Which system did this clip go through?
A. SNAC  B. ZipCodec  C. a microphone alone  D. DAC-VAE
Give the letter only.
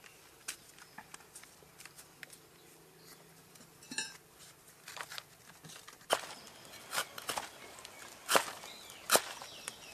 C